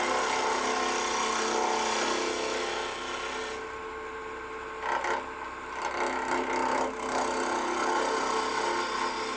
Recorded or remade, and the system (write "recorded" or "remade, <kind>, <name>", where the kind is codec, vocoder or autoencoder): recorded